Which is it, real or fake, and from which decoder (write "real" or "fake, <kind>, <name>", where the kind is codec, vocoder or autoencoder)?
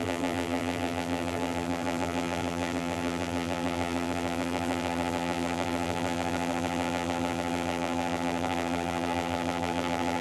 fake, vocoder, BigVGAN v2